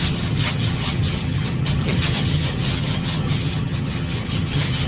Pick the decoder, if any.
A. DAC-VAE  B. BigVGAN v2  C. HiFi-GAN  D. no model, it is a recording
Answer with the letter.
C